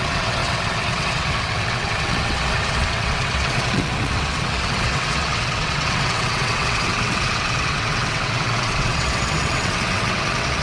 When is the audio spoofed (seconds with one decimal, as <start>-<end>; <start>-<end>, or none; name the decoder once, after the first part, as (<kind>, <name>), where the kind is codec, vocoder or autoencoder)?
0.0-10.6 (vocoder, WaveNeXt)